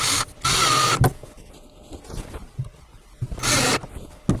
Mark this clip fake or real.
real